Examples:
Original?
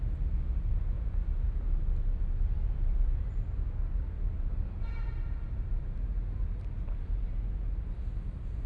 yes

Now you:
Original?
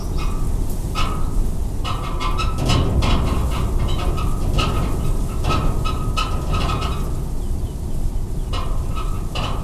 yes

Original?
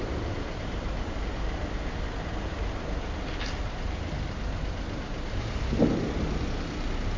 yes